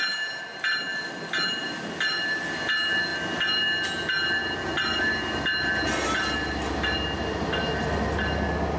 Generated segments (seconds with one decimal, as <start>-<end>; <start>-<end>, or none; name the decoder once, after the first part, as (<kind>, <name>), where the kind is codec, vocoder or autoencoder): none